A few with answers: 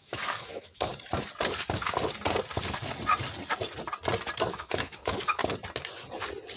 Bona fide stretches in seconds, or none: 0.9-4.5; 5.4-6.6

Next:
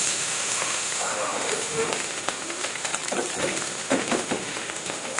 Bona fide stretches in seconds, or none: 2.9-3.4

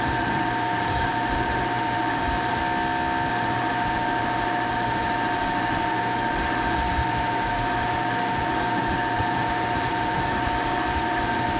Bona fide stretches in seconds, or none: 2.6-3.3

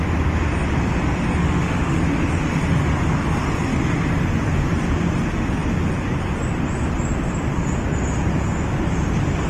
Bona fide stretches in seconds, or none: 0.0-1.4; 2.0-9.5

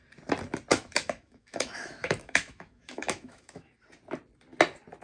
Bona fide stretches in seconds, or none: 0.0-0.7; 3.7-5.0

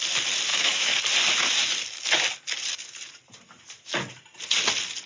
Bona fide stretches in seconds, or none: 0.0-0.5; 1.0-5.1

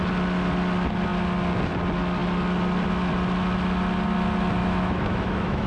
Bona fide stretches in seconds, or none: 0.0-4.6